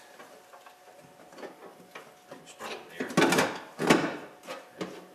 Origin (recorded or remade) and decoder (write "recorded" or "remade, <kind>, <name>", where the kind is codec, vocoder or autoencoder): recorded